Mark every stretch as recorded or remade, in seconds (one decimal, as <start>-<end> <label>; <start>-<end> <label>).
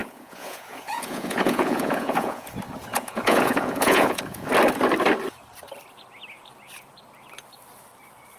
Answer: 0.0-2.5 remade; 2.5-2.9 recorded; 2.9-4.5 remade; 4.5-8.4 recorded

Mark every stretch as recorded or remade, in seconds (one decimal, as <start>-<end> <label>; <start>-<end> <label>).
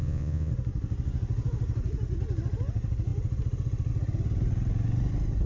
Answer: 0.0-0.5 remade; 0.5-5.5 recorded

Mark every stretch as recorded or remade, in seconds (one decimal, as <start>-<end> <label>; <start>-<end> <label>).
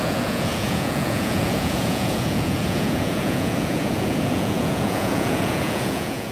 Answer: 0.0-6.3 remade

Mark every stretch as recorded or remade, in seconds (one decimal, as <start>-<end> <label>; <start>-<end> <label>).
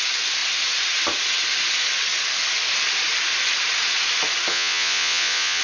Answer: 0.0-4.5 recorded; 4.5-5.6 remade